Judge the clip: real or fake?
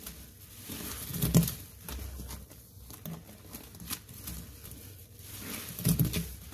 real